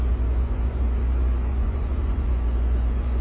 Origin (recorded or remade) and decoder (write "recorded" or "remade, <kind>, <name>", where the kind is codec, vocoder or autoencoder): remade, vocoder, Vocos